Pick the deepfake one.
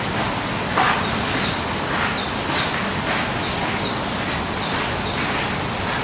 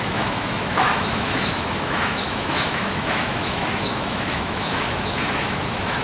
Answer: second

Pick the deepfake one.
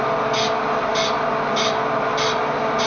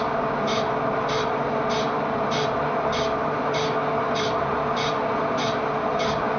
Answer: second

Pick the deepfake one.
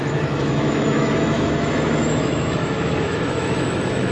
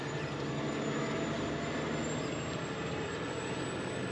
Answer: first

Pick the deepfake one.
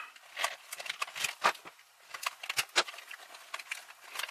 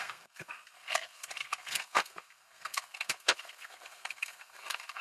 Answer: second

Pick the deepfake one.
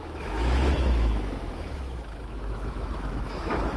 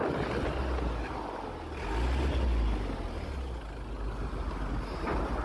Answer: first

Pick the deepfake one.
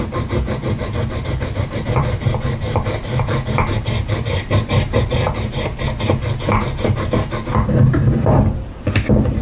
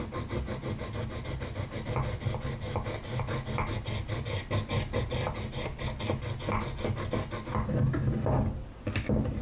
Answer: first